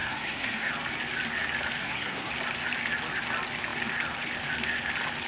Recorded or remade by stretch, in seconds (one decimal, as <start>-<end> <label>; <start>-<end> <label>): 0.0-0.7 remade; 0.7-1.8 recorded; 1.8-2.3 remade; 2.3-5.3 recorded